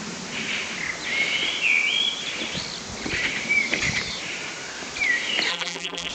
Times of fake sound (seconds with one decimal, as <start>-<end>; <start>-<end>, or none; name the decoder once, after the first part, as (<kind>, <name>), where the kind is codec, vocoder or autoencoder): 5.5-6.1 (vocoder, BigVGAN v2)